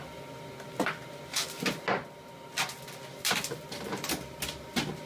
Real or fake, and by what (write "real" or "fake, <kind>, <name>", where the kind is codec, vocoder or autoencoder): real